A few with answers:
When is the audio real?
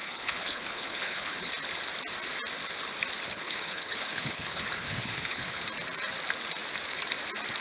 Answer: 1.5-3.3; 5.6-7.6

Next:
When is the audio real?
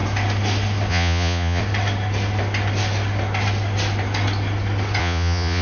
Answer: 0.0-0.9; 1.6-5.0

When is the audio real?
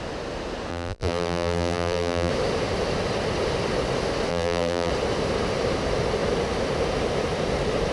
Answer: 0.0-0.7; 2.3-4.3; 4.9-7.9